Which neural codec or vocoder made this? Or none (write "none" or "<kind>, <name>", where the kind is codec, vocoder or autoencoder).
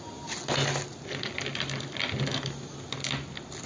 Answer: none